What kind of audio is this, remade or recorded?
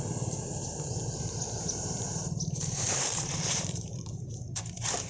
remade